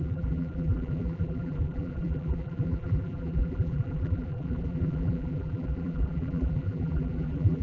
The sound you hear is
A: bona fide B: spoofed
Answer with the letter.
B